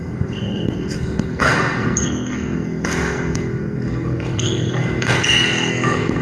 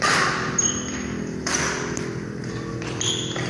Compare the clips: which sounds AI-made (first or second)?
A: first